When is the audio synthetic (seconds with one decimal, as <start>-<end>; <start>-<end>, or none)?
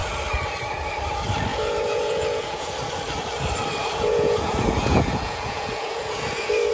1.5-2.7; 3.8-6.7